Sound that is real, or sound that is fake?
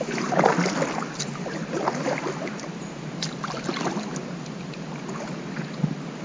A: real